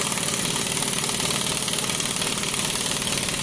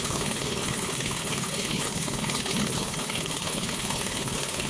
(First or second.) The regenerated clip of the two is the second